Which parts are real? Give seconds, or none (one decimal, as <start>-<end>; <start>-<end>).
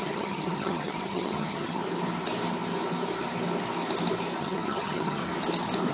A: 1.8-4.4; 5.2-5.9